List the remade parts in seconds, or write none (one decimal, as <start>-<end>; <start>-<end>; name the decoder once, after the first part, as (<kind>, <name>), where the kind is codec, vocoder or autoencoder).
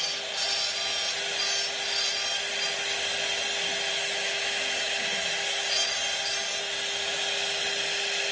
3.9-5.3 (autoencoder, DAC-VAE)